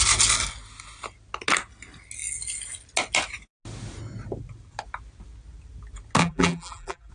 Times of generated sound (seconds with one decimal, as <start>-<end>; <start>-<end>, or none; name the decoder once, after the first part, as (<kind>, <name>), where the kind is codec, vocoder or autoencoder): 6.2-7.1 (vocoder, BigVGAN v2)